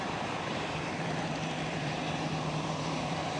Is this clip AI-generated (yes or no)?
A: yes